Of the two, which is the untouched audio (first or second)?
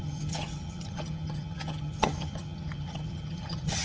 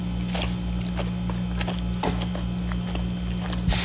second